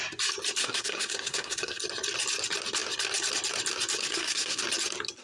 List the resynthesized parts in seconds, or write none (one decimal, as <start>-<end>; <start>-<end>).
0.6-1.8; 4.1-4.6